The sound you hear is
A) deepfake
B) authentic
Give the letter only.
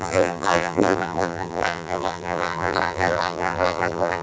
A